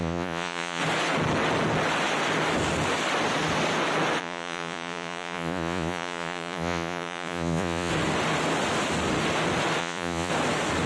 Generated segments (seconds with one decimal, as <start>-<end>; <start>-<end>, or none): 0.0-0.8; 4.2-7.9; 9.8-10.3

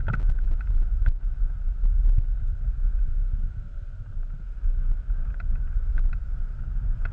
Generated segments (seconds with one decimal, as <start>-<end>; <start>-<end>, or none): none

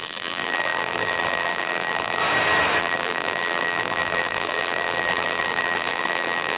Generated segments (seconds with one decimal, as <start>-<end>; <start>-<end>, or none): 0.0-2.2; 2.8-6.6

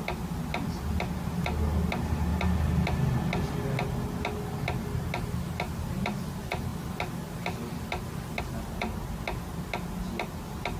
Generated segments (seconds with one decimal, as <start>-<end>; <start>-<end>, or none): none

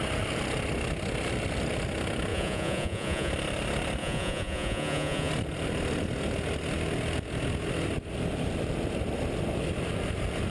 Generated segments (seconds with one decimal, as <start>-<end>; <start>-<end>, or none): 2.3-3.3; 4.0-5.3

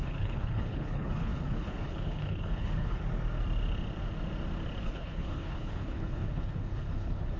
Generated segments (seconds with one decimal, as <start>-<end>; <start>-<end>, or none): 0.0-3.0; 4.8-7.4

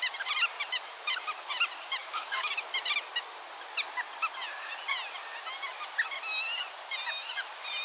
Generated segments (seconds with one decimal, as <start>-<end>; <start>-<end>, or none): 2.0-2.5